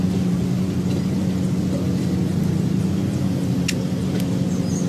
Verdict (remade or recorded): recorded